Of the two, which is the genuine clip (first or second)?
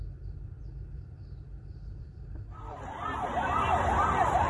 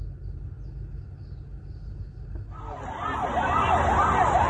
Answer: second